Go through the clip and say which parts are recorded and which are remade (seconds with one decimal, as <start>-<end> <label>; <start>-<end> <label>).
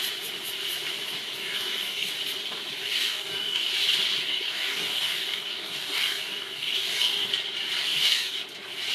0.0-1.4 recorded; 1.4-2.1 remade; 2.1-2.8 recorded; 2.8-3.7 remade; 3.7-4.2 recorded; 4.2-7.3 remade; 7.3-7.8 recorded; 7.8-8.4 remade; 8.4-8.9 recorded